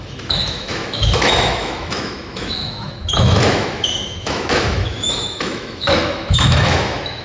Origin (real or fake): fake